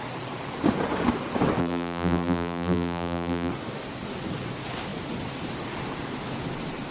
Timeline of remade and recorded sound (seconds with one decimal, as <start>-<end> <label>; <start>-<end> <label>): 0.0-1.6 recorded; 1.6-3.5 remade; 3.5-6.9 recorded